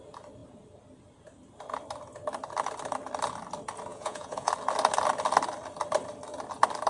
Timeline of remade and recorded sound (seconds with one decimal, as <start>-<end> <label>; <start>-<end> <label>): 0.0-3.9 recorded; 3.9-4.5 remade; 4.5-6.9 recorded